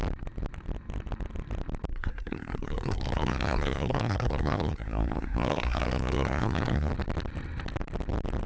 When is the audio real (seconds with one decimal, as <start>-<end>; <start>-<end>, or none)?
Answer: 0.0-1.9; 6.9-8.5

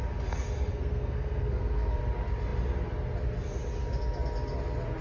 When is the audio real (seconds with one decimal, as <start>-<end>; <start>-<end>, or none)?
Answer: 0.0-0.7; 2.0-5.0